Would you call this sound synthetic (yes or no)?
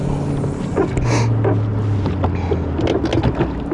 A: no